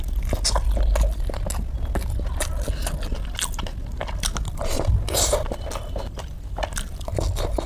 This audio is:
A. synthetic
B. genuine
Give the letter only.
B